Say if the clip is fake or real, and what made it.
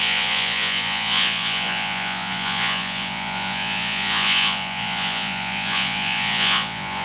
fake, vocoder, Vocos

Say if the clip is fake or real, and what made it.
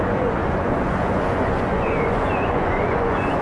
fake, vocoder, Vocos